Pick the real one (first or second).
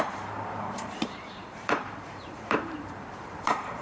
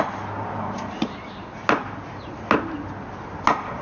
second